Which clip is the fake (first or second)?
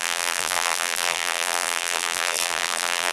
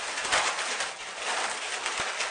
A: first